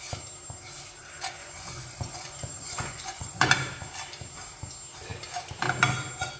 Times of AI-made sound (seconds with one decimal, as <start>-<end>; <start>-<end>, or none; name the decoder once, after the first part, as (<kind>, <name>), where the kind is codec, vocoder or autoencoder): 1.4-3.5 (vocoder, Vocos)

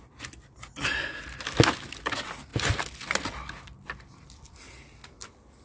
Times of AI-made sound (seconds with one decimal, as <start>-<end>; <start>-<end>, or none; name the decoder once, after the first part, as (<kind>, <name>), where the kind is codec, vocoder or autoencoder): none